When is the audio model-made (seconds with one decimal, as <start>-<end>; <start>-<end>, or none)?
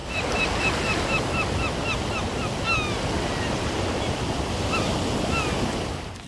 none